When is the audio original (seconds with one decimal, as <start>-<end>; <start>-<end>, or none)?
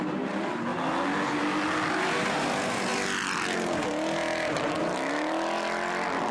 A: 0.0-6.3